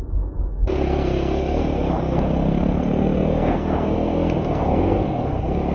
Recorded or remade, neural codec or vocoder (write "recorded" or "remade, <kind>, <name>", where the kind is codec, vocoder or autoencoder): remade, codec, SNAC